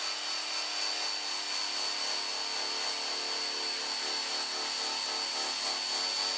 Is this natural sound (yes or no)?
yes